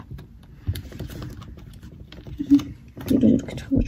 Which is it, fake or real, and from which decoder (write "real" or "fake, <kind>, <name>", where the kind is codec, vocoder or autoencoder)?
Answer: fake, vocoder, BigVGAN v2